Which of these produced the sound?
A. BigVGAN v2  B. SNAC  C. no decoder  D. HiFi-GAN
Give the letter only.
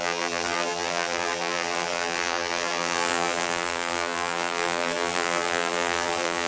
A